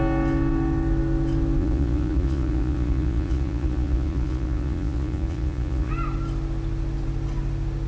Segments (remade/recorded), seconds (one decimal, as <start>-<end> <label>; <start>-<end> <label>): 0.0-1.6 recorded; 1.6-5.9 remade; 5.9-7.9 recorded